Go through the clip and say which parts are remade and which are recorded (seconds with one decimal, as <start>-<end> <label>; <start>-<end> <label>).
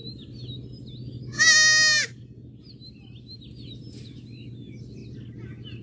0.0-5.8 recorded